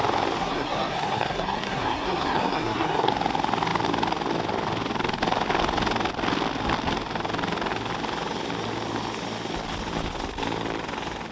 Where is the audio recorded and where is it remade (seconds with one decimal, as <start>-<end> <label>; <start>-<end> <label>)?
0.0-0.4 recorded; 0.4-3.1 remade; 3.1-11.3 recorded